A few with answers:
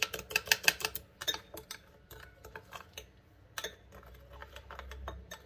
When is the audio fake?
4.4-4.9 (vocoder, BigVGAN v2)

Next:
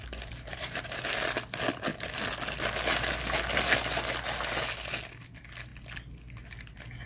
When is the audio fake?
0.0-1.1 (vocoder, BigVGAN v2)

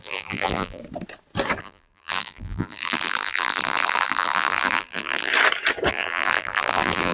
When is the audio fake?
0.0-0.8 (vocoder, BigVGAN v2); 1.6-5.3; 5.9-7.1

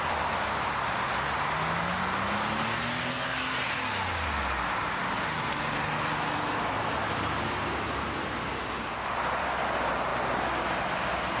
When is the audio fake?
none

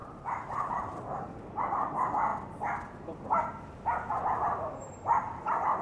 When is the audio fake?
0.0-1.6 (vocoder, BigVGAN v2)

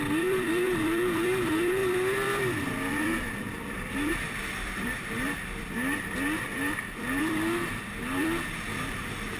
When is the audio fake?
0.0-9.4 (vocoder, BigVGAN v2)